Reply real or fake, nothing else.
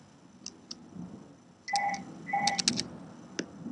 real